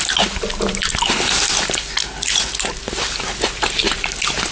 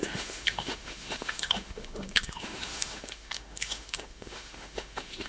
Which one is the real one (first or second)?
first